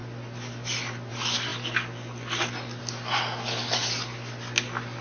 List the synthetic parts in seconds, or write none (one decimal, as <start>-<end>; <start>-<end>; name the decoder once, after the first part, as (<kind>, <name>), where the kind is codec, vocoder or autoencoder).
none